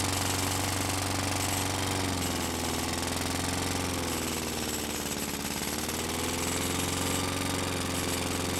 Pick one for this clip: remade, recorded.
recorded